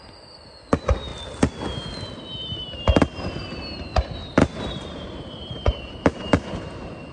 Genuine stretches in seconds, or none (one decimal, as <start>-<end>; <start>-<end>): 0.0-4.2; 6.6-7.1